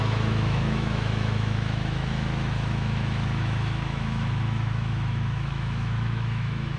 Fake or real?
fake